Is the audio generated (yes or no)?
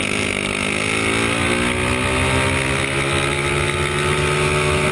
no